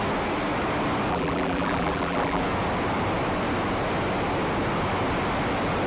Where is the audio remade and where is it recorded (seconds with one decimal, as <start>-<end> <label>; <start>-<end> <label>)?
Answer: 0.0-1.1 recorded; 1.1-2.4 remade; 2.4-5.9 recorded